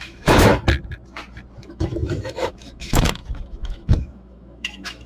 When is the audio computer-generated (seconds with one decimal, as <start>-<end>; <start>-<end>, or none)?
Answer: 0.0-0.5; 1.6-5.1